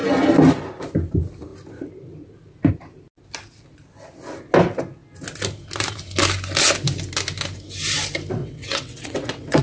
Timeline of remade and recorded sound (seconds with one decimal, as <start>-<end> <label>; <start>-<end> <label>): 0.0-8.4 recorded; 8.4-9.6 remade